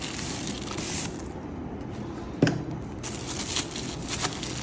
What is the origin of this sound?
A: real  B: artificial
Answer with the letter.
A